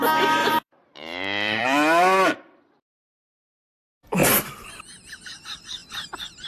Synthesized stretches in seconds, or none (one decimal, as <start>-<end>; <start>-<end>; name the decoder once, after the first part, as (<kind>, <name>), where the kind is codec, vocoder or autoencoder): 0.4-3.8 (vocoder, BigVGAN v2); 5.8-6.5